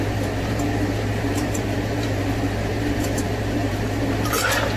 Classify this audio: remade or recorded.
remade